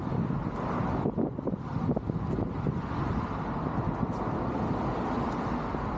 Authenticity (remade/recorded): recorded